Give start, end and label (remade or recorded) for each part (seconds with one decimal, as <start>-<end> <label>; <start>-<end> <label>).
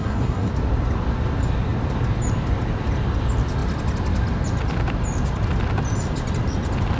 0.0-0.5 remade; 0.5-7.0 recorded